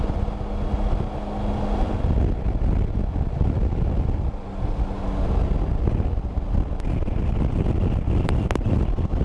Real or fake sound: real